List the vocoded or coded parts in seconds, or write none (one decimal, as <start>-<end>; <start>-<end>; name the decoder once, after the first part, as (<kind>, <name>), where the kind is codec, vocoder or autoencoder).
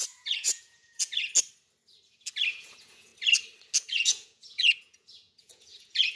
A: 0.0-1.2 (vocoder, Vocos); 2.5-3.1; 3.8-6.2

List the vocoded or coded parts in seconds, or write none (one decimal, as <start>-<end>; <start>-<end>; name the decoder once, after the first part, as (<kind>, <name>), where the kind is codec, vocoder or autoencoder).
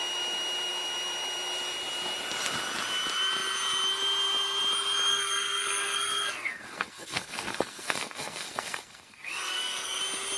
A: 5.1-10.0 (codec, SNAC)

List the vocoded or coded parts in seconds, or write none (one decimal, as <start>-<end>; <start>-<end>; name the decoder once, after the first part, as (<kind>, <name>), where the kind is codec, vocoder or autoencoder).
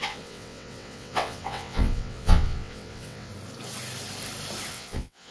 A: 0.0-3.3 (vocoder, WaveNeXt); 4.7-5.3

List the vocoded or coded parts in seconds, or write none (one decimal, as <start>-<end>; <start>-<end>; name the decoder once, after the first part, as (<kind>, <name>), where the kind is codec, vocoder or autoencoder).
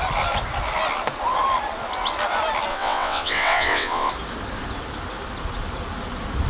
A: 2.7-4.1 (vocoder, WaveNeXt)